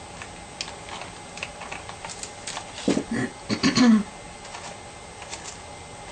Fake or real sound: real